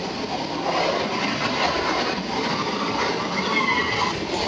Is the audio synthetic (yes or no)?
no